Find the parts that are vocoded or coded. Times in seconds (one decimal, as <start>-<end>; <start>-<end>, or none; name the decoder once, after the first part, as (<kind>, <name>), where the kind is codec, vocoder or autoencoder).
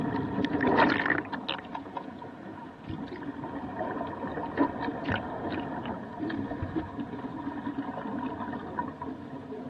1.7-2.6 (vocoder, Vocos)